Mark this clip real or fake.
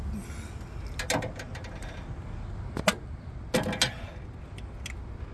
real